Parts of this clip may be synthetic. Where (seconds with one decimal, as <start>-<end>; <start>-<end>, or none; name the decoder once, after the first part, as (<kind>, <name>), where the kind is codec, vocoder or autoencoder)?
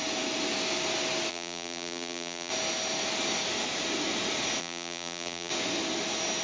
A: 1.3-2.5 (vocoder, BigVGAN v2); 4.6-5.5